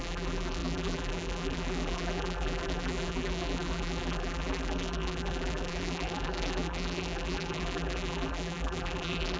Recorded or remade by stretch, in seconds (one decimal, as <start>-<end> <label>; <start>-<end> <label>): 0.0-9.4 remade